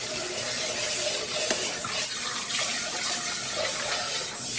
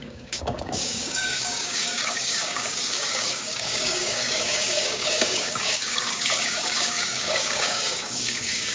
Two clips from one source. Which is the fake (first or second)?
second